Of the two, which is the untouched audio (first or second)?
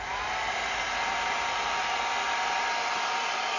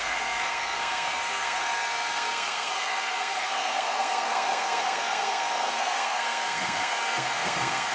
first